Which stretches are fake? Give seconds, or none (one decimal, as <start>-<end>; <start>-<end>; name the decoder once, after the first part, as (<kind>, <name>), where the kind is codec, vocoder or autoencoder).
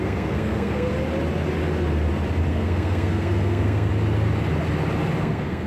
0.0-0.9 (codec, SNAC); 2.5-3.9; 5.2-5.7